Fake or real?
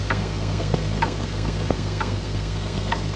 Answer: fake